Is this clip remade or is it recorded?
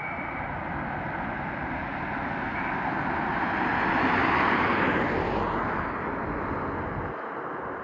recorded